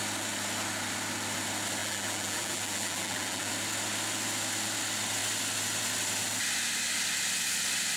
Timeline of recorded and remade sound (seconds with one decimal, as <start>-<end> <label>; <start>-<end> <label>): 0.0-1.8 recorded; 1.8-3.5 remade; 3.5-8.0 recorded